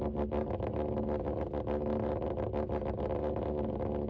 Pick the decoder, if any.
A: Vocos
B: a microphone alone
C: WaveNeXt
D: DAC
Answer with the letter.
B